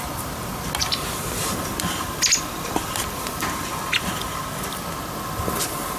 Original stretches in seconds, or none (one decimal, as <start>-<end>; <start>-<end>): 0.0-0.8; 4.4-6.0